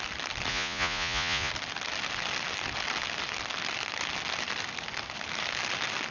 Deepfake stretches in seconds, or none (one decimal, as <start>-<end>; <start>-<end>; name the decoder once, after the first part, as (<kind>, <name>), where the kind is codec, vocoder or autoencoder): 0.5-1.5 (vocoder, Vocos)